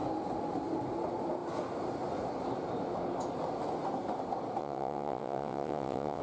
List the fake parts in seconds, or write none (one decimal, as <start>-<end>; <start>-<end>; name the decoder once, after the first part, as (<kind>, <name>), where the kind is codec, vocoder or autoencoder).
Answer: 4.6-6.2 (vocoder, WaveNeXt)